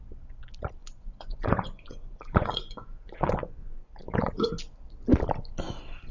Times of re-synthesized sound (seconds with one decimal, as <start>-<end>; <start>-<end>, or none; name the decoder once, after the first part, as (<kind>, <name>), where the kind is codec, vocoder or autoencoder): 0.8-4.5 (vocoder, Vocos)